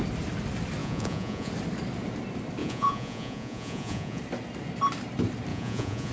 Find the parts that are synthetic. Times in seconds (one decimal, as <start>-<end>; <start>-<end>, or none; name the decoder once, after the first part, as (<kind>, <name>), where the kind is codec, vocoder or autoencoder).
0.8-1.5 (vocoder, Vocos); 2.6-4.2; 5.5-6.1